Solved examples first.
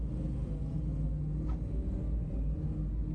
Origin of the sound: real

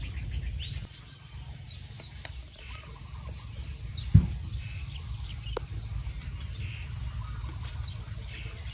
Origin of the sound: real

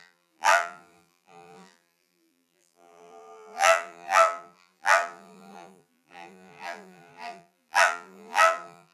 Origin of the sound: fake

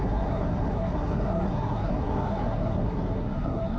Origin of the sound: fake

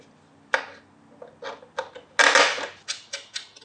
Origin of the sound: real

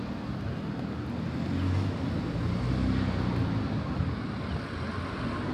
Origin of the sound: real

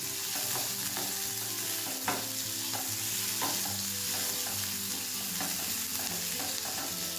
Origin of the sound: real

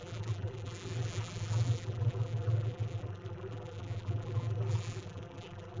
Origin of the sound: fake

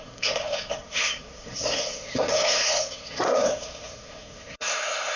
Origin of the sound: fake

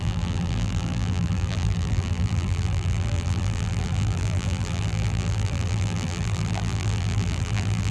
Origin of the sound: fake